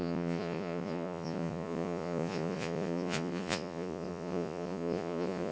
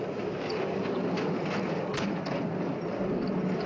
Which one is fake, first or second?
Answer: first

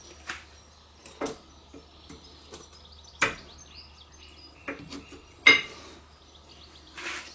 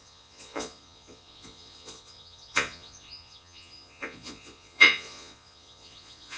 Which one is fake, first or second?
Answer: second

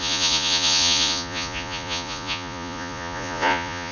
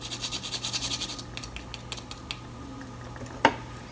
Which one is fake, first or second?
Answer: first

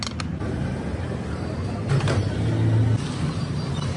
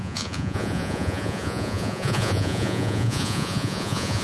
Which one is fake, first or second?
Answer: second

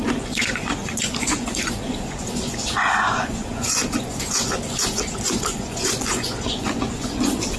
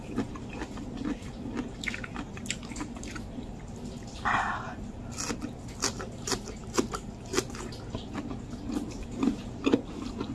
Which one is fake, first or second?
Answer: first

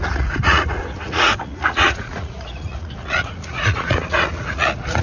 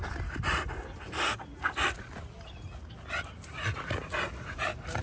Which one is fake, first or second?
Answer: first